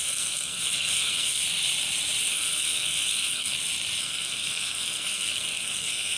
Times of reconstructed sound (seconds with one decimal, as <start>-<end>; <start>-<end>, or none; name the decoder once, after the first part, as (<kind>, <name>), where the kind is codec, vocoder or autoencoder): 0.0-1.4 (codec, SNAC); 2.3-3.5; 4.0-6.2